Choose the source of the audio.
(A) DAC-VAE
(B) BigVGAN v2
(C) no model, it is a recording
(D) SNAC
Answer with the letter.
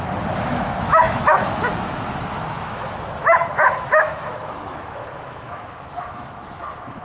A